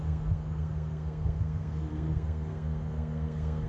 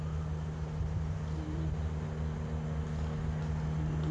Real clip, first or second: second